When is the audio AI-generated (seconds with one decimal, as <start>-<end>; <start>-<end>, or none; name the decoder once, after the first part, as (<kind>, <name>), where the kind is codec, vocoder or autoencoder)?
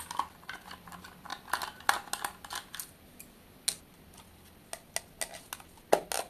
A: none